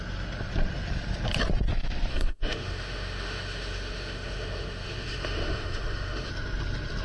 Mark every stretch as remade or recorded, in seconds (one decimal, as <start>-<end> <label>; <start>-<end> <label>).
0.0-2.1 recorded; 2.1-6.3 remade; 6.3-7.0 recorded